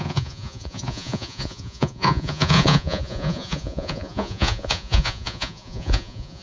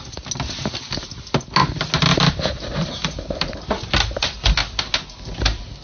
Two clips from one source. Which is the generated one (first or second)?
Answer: first